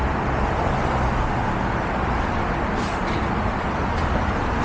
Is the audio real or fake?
real